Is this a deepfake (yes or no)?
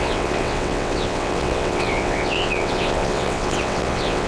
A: yes